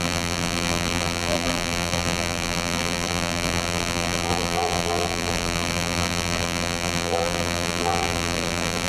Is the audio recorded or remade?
remade